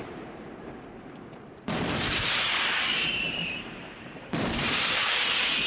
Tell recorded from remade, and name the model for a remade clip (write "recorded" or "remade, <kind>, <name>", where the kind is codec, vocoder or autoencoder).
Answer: remade, vocoder, BigVGAN v2